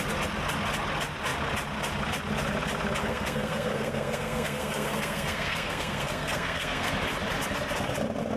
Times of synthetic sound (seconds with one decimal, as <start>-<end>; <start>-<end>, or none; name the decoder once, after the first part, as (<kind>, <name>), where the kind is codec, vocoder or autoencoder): 3.0-6.9 (codec, SNAC)